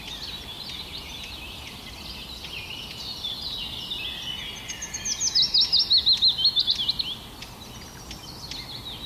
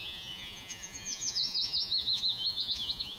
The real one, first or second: first